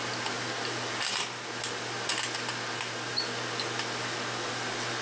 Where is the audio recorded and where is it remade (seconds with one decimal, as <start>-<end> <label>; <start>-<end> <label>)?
0.0-5.0 recorded